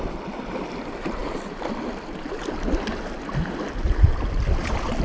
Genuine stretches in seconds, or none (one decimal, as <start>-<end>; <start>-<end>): 0.0-5.0